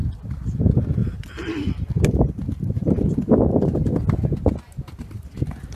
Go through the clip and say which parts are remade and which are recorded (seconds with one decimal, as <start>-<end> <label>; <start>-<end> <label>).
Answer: 0.0-0.6 remade; 0.6-1.0 recorded; 1.0-4.0 remade; 4.0-4.9 recorded; 4.9-5.8 remade